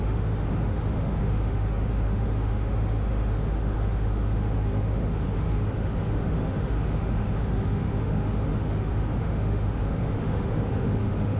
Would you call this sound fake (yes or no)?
yes